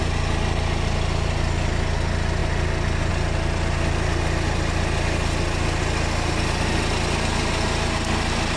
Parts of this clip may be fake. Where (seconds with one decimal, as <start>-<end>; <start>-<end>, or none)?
none